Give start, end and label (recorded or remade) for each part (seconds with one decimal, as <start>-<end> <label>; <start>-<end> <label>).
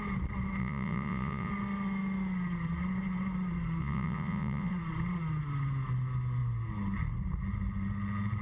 0.0-0.6 recorded; 0.6-1.5 remade; 1.5-3.8 recorded; 3.8-4.7 remade; 4.7-8.4 recorded